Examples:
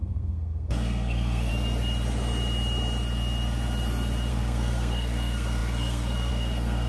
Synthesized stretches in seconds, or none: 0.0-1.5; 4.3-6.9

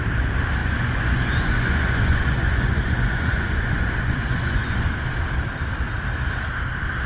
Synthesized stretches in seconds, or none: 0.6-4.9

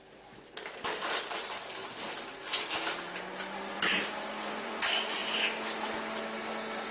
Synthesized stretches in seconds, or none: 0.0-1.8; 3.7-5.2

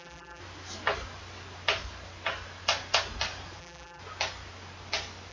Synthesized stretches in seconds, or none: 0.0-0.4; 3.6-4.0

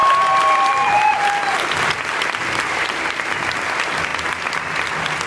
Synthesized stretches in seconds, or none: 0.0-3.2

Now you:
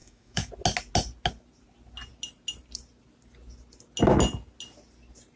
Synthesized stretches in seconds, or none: 0.0-0.5

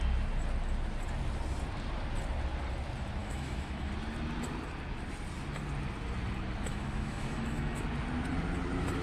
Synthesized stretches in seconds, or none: 3.2-3.9; 6.7-7.8

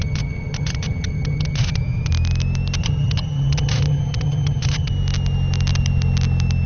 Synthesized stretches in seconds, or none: 0.0-2.1; 2.8-4.9